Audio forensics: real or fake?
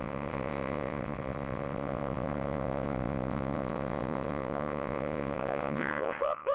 fake